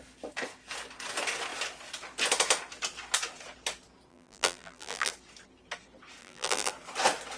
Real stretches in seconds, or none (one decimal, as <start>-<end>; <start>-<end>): 0.0-4.1; 5.1-6.2; 6.7-7.4